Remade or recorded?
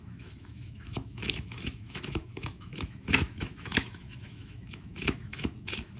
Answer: remade